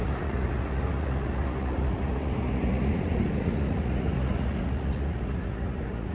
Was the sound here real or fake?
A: fake